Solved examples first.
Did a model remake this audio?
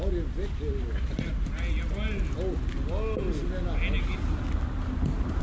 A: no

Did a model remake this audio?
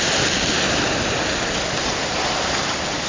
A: no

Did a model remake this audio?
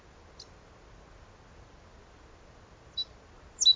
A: no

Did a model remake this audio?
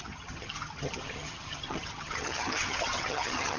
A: yes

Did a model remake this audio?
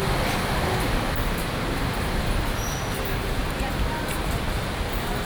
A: no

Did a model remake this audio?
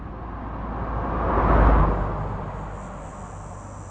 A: no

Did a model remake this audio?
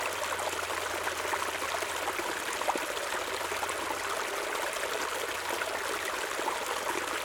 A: no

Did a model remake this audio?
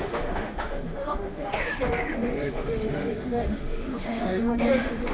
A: yes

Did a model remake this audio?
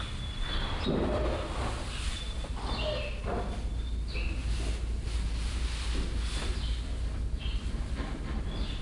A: no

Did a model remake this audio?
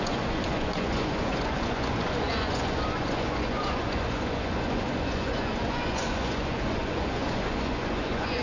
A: yes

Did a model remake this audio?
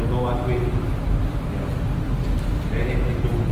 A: no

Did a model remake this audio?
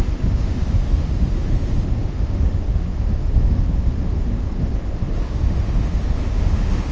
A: yes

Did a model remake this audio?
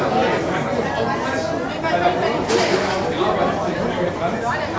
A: no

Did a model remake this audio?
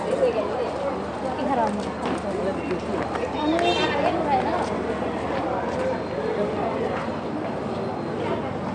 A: no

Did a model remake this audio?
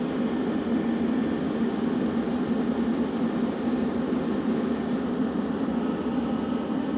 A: no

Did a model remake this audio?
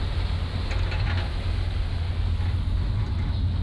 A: no